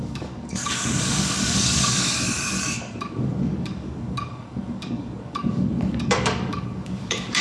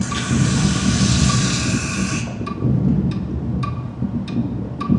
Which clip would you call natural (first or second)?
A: second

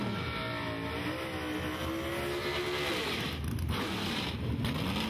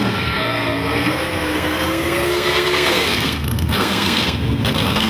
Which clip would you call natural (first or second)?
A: first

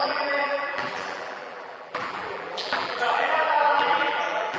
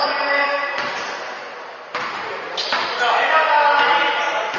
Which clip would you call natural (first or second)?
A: second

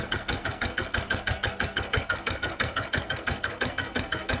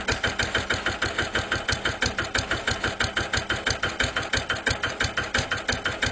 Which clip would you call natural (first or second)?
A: second